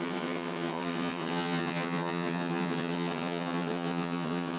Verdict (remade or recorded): remade